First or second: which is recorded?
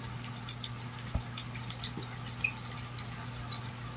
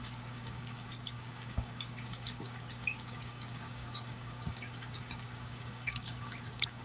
first